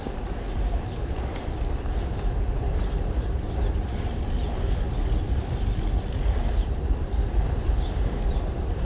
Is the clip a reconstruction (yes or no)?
yes